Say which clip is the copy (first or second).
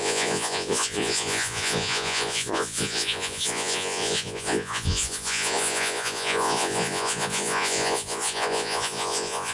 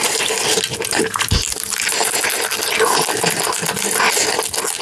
first